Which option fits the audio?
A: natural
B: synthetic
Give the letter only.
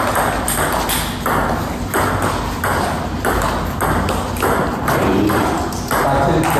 A